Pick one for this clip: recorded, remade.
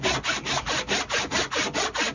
recorded